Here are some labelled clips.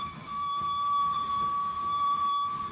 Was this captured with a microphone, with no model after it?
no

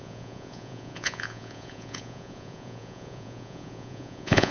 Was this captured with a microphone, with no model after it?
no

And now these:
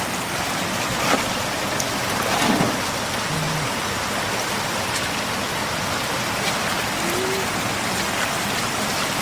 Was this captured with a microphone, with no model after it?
yes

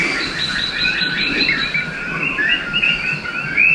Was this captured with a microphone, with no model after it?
yes